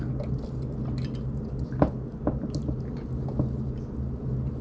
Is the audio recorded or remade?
recorded